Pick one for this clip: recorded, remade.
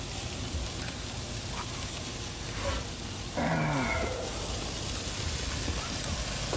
recorded